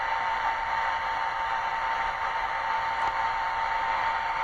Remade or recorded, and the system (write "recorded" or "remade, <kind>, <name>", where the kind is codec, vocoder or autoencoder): recorded